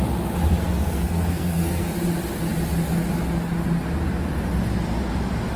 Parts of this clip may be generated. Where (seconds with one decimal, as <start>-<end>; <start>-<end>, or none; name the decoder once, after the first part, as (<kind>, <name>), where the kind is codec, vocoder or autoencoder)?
0.6-1.9 (codec, SNAC)